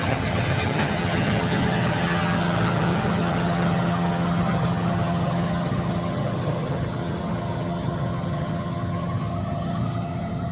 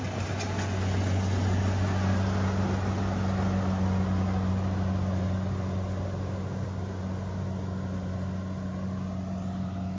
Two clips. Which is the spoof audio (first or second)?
first